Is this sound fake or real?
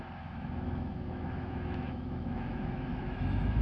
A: fake